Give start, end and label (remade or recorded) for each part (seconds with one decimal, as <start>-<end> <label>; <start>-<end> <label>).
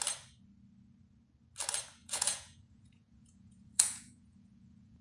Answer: 0.0-2.0 recorded; 2.0-5.0 remade